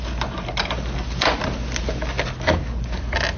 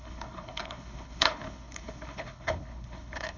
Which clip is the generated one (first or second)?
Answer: second